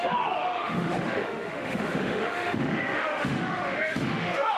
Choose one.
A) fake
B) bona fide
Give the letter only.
A